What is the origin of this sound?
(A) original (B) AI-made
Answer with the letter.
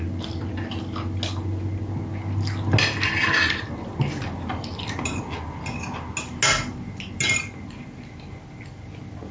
A